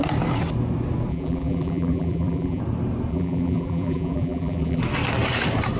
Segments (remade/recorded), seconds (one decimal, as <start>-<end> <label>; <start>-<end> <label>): 0.0-1.1 recorded; 1.1-2.6 remade; 2.6-3.1 recorded; 3.1-4.8 remade; 4.8-5.8 recorded